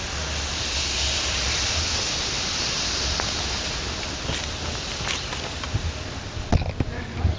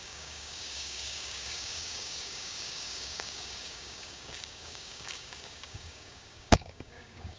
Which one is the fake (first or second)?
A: second